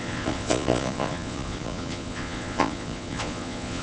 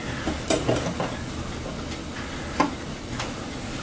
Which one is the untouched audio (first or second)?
second